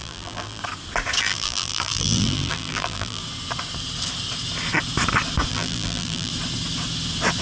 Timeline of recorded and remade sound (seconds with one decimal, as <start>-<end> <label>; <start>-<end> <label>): 0.0-0.6 remade; 0.6-1.2 recorded; 1.2-3.2 remade; 3.2-5.5 recorded; 5.5-6.3 remade; 6.3-7.4 recorded